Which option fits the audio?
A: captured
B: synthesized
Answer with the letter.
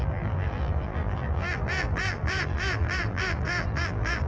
B